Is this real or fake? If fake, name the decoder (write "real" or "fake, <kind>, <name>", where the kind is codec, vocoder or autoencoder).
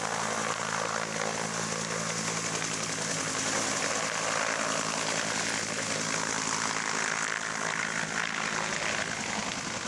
real